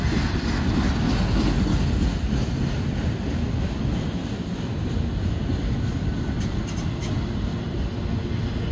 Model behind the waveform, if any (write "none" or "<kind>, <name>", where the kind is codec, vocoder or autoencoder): none